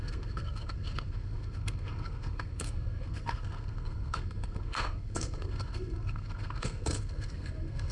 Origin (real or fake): fake